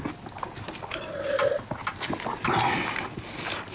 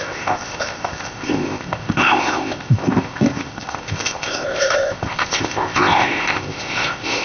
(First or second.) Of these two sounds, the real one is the first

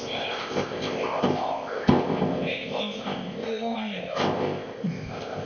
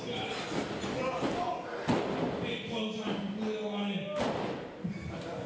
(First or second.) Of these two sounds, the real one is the second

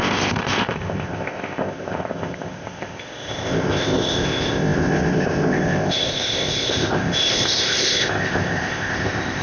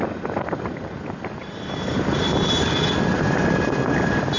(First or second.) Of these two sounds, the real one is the second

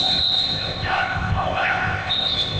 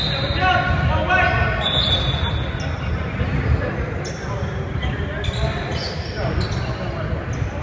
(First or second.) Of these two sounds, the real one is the second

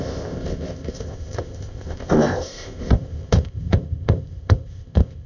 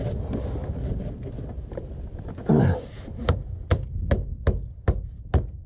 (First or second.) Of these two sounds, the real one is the second